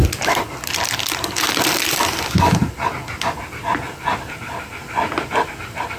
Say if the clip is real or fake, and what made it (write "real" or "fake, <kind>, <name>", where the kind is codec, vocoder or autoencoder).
real